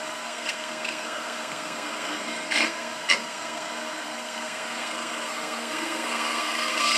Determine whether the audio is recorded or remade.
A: remade